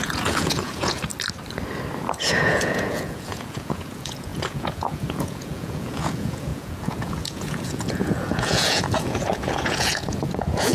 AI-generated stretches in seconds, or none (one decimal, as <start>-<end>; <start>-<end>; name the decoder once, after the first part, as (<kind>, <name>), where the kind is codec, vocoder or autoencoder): 0.0-1.1 (vocoder, Vocos); 2.1-10.7